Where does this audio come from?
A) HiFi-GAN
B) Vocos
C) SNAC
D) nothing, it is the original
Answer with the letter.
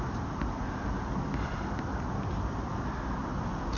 D